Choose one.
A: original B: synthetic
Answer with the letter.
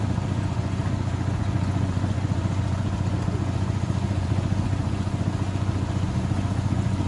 B